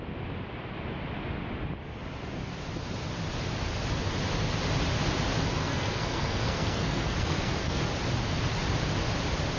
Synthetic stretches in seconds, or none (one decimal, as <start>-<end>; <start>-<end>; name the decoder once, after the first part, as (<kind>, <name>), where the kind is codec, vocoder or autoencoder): 5.6-7.8 (codec, SNAC)